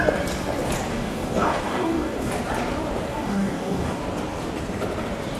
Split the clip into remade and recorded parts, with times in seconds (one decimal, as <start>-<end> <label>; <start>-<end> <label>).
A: 0.0-0.9 recorded; 0.9-2.3 remade; 2.3-3.1 recorded; 3.1-4.0 remade; 4.0-5.4 recorded